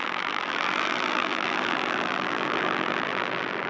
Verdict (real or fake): fake